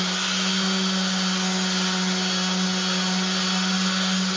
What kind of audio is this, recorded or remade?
recorded